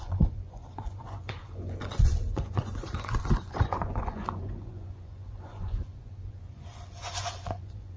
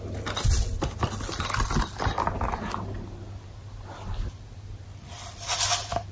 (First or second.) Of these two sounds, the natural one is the second